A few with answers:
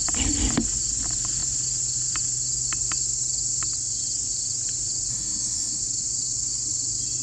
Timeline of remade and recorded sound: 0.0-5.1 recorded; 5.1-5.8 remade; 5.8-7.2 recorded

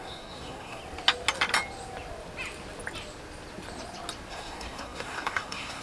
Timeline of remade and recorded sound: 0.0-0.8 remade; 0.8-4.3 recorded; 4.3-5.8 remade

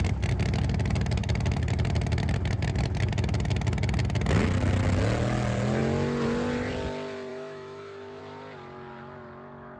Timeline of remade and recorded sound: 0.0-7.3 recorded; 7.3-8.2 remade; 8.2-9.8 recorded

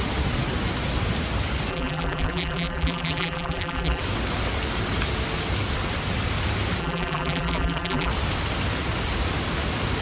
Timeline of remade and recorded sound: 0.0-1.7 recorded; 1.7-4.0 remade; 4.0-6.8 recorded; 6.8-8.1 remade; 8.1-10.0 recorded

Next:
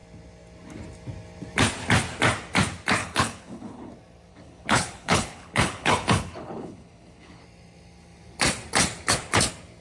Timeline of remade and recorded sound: 0.0-3.0 recorded; 3.0-3.9 remade; 3.9-4.3 recorded; 4.3-7.4 remade; 7.4-9.8 recorded

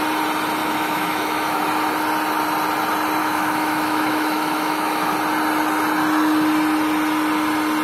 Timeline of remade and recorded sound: 0.0-0.6 recorded; 0.6-1.6 remade; 1.6-3.2 recorded; 3.2-5.1 remade; 5.1-7.8 recorded